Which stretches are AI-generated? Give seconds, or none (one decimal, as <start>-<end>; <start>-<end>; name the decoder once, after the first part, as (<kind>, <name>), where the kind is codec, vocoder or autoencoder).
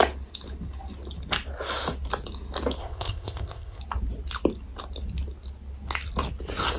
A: 2.8-3.8 (codec, ZipCodec)